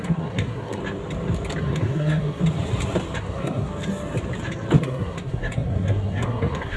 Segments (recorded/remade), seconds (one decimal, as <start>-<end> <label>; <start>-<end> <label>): 0.0-0.8 remade; 0.8-1.6 recorded; 1.6-2.4 remade; 2.4-3.2 recorded; 3.2-3.7 remade; 3.7-4.8 recorded; 4.8-6.8 remade

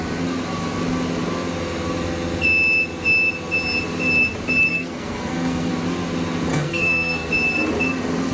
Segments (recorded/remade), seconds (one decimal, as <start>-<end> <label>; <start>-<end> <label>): 0.0-4.7 recorded; 4.7-5.7 remade; 5.7-6.5 recorded; 6.5-7.3 remade; 7.3-8.3 recorded